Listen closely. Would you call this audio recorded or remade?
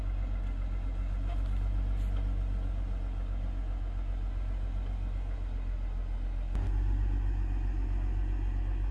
recorded